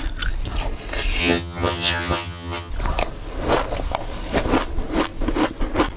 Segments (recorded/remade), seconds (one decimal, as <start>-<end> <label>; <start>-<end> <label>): 0.0-1.2 recorded; 1.2-2.7 remade; 2.7-6.0 recorded